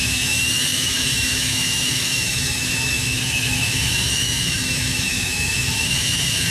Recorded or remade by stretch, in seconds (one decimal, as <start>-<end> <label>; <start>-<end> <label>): 0.0-6.5 remade